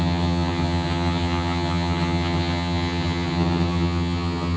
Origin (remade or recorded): remade